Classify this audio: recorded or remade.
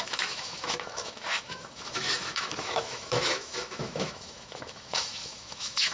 remade